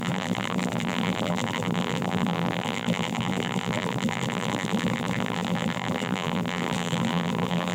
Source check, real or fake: fake